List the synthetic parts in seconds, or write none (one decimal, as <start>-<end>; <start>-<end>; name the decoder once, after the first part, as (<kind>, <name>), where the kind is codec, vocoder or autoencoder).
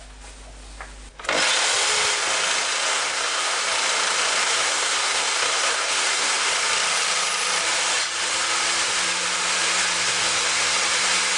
2.9-3.6 (codec, SNAC); 4.4-6.5